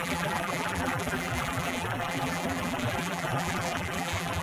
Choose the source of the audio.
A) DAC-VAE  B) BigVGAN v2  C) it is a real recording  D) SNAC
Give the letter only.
B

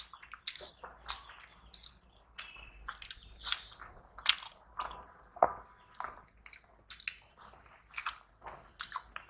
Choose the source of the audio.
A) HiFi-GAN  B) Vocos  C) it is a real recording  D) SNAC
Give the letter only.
C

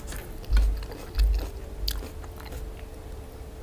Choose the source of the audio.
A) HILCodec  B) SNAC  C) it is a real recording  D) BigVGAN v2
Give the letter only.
C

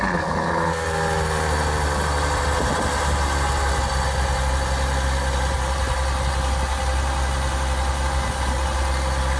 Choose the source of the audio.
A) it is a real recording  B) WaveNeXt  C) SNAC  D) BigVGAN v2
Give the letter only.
A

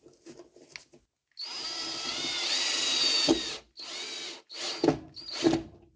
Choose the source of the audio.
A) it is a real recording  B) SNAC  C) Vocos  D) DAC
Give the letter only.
A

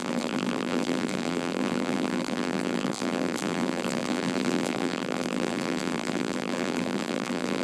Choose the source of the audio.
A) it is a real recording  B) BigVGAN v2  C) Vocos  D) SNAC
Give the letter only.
B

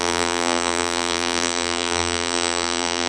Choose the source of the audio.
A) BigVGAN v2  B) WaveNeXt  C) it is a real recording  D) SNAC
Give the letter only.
A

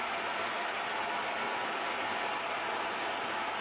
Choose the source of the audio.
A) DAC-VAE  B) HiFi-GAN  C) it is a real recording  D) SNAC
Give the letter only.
C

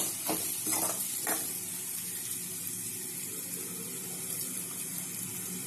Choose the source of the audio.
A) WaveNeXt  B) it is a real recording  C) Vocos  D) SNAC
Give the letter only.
B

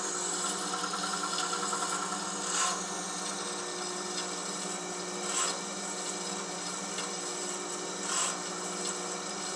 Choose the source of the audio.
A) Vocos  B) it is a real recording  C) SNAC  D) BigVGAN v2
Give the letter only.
B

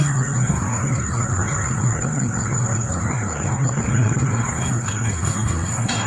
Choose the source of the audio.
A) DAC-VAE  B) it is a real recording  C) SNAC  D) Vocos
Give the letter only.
C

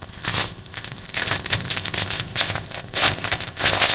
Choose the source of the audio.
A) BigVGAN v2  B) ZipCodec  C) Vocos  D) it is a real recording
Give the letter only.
B